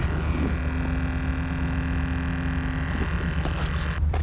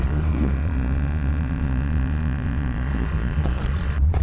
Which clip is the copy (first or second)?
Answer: second